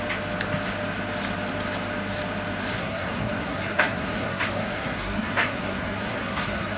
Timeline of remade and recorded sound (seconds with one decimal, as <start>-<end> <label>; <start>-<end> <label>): 0.0-2.7 recorded; 2.7-6.8 remade